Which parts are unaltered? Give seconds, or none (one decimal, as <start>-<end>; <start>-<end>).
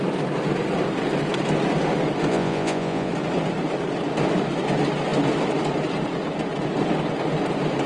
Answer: 0.0-2.3; 3.1-7.9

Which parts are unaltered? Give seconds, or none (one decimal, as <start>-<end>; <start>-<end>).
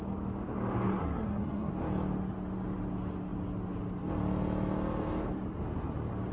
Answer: 0.0-1.0; 1.7-6.3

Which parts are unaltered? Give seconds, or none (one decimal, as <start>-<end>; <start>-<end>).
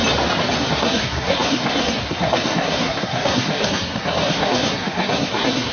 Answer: 0.0-0.6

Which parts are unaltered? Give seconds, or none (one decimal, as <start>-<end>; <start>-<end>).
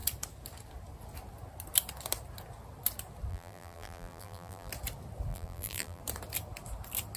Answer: 0.0-3.3; 4.7-5.3; 6.0-7.2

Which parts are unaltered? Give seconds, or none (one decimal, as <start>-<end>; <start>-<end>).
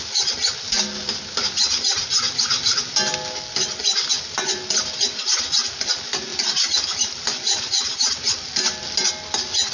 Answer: 0.0-9.7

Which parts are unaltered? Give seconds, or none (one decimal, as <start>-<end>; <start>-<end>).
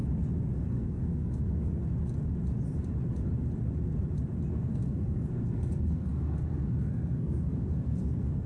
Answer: 0.0-0.7; 1.8-4.5